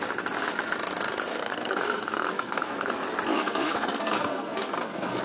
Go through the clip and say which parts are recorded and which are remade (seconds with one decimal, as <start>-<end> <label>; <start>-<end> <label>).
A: 0.0-1.4 recorded; 1.4-2.9 remade; 2.9-3.3 recorded; 3.3-5.2 remade